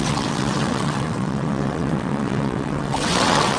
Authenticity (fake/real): fake